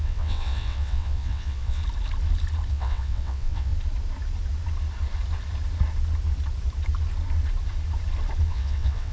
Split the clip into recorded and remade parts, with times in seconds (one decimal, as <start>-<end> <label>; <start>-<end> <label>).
0.0-1.8 remade; 1.8-2.7 recorded; 2.7-3.7 remade; 3.7-8.5 recorded; 8.5-9.1 remade